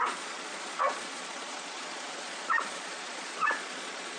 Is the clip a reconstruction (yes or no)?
yes